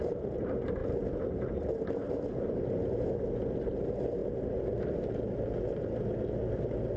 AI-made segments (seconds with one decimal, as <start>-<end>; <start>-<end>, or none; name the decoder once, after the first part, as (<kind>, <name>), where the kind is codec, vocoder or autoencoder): none